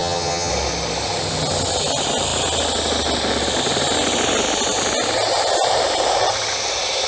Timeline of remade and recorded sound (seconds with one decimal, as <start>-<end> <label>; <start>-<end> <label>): 0.0-0.5 remade; 0.5-7.1 recorded